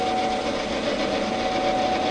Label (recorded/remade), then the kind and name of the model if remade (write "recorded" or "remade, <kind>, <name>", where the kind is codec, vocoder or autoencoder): recorded